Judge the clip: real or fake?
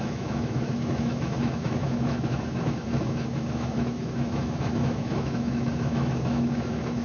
fake